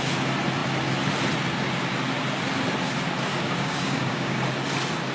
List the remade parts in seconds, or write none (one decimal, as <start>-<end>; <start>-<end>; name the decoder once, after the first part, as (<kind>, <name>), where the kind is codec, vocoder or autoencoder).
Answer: 3.3-4.4 (codec, DAC)